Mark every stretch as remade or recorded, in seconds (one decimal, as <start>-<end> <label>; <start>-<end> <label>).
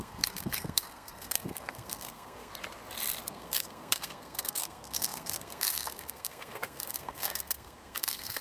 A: 0.0-2.5 remade; 2.5-3.3 recorded; 3.3-8.4 remade